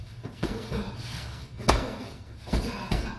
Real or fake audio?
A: fake